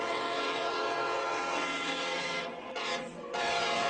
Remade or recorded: remade